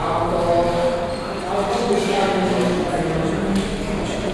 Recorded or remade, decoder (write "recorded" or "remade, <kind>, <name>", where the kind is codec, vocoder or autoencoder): recorded